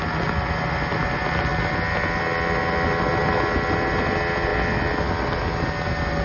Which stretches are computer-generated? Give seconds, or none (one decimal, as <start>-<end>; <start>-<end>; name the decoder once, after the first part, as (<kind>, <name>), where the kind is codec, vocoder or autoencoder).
none